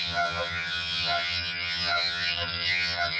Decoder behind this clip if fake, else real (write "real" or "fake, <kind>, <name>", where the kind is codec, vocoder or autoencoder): fake, vocoder, HiFi-GAN